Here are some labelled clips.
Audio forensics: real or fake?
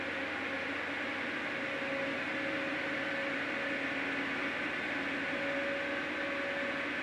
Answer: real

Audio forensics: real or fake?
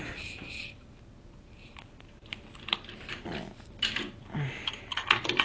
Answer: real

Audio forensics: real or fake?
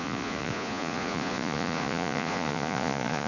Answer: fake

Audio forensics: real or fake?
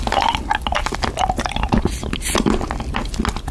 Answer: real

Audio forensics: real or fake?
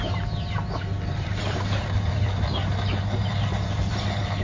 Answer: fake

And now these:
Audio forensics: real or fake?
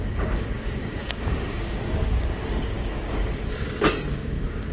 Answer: fake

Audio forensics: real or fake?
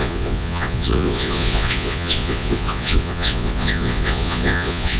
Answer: fake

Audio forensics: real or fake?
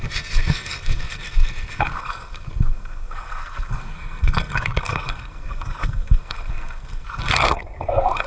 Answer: fake